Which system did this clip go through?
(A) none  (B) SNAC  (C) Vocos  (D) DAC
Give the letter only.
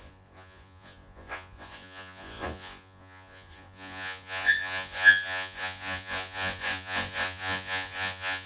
C